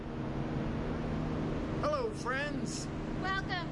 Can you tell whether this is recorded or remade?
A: recorded